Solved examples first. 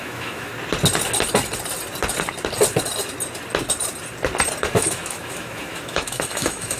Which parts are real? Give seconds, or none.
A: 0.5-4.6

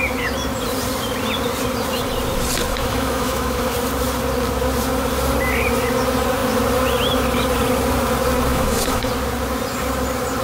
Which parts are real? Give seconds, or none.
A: 0.0-2.7; 3.6-8.5; 9.1-10.4